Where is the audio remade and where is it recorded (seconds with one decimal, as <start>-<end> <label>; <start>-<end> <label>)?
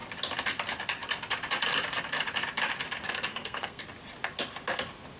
0.0-3.3 recorded; 3.3-3.8 remade; 3.8-5.2 recorded